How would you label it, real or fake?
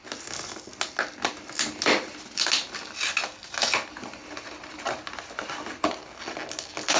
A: real